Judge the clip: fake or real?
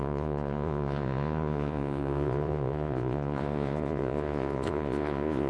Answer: fake